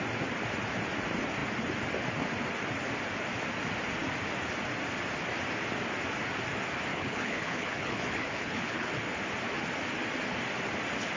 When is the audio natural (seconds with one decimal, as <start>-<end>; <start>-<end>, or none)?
0.0-6.9; 8.9-11.2